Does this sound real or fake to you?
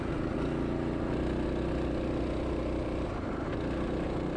real